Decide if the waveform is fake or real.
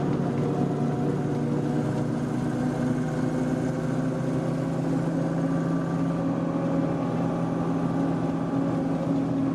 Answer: real